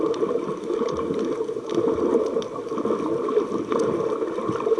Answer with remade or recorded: recorded